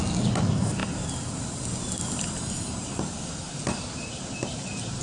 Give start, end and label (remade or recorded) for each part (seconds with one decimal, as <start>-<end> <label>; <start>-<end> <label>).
0.0-5.0 recorded